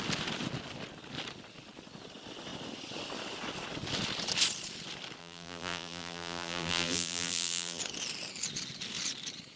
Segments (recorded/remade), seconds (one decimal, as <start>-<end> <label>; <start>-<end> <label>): 0.0-5.2 recorded; 5.2-7.8 remade; 7.8-9.6 recorded